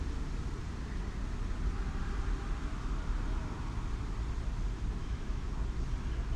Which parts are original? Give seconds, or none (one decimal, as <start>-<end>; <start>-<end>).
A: 0.0-5.0; 5.5-6.4